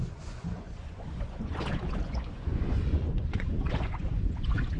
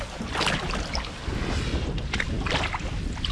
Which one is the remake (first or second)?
first